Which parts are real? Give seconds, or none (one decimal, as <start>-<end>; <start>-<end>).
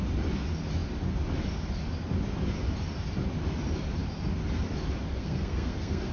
0.0-5.1